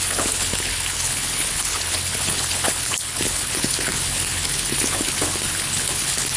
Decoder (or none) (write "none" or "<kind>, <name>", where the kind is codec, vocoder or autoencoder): codec, HILCodec